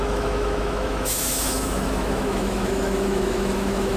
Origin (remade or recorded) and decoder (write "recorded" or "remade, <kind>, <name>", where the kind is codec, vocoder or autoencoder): remade, autoencoder, DAC-VAE